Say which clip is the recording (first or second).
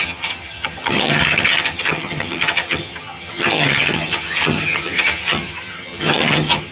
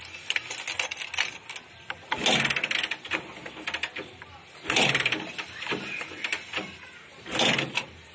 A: second